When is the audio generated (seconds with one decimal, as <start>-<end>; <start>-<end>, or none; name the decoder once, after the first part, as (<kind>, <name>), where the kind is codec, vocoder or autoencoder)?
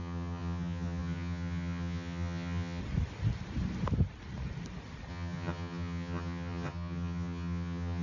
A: 0.0-2.8 (vocoder, HiFi-GAN); 5.1-8.0